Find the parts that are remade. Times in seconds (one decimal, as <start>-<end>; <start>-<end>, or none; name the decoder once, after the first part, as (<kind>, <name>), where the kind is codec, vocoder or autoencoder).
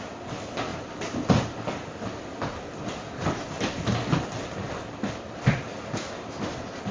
none